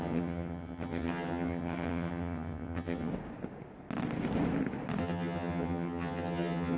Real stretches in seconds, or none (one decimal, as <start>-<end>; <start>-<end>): 3.1-5.0